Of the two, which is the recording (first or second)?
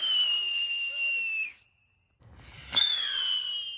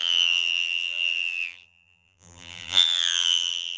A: first